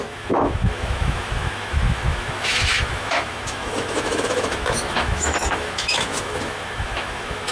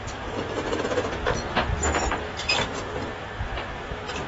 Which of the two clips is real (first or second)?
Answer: second